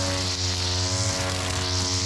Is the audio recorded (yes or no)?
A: yes